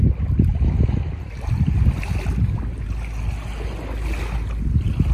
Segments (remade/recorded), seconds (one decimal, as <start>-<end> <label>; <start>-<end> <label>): 0.0-5.1 recorded